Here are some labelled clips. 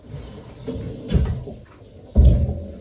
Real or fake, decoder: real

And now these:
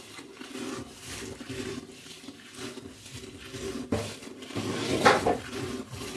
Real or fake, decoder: real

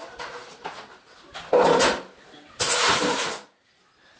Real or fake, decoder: real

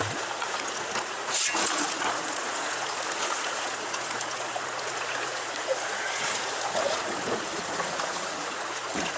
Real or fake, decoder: fake, vocoder, Vocos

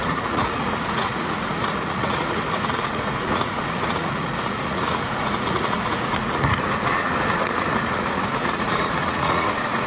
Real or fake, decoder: fake, vocoder, Vocos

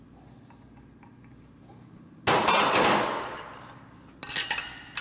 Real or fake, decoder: real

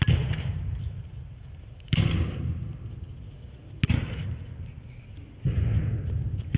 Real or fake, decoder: real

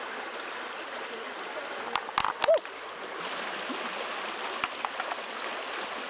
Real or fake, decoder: real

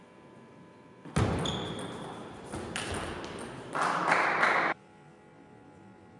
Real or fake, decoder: real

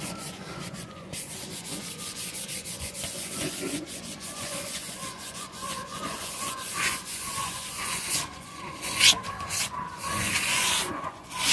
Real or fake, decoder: fake, vocoder, Vocos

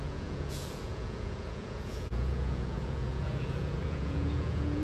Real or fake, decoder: fake, vocoder, Vocos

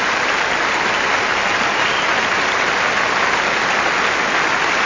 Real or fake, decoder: real